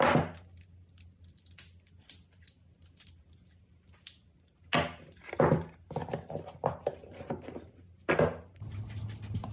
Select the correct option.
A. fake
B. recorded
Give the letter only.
B